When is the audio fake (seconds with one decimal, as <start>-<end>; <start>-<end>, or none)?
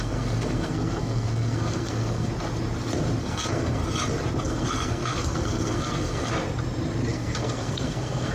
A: 0.0-2.3; 3.2-3.8; 4.4-6.3; 7.1-8.3